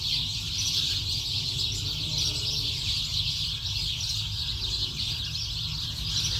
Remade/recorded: recorded